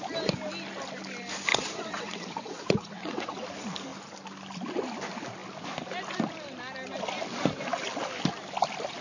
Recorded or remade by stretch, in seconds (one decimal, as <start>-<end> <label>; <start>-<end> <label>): 0.0-1.5 recorded; 1.5-3.3 remade; 3.3-9.0 recorded